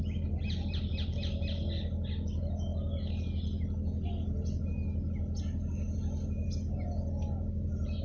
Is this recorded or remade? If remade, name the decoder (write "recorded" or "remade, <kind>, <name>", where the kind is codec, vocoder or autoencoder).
recorded